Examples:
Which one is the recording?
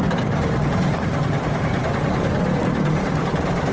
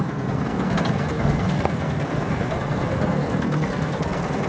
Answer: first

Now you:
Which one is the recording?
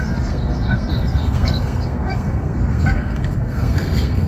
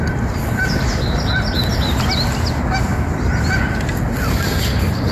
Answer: second